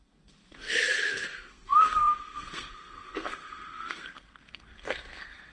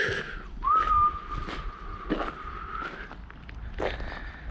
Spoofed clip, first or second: first